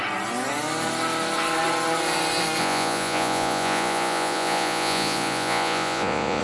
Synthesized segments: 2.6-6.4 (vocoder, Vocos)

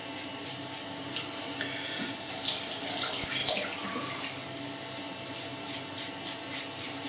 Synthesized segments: none

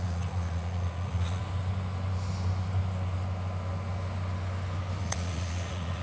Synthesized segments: 0.0-1.4 (vocoder, Vocos); 5.0-6.0

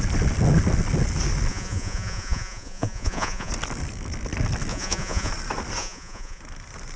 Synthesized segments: 1.5-3.5 (vocoder, Vocos); 4.7-5.3; 5.8-6.4

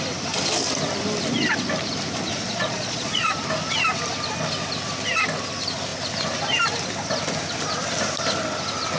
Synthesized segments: 2.3-3.3 (vocoder, Vocos)

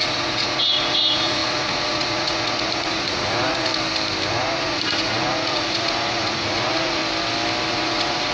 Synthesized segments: 0.0-3.7 (vocoder, Vocos); 4.3-7.0; 7.7-8.3

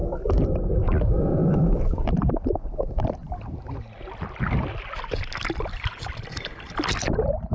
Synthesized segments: none